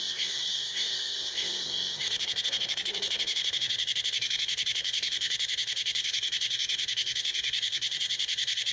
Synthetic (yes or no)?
yes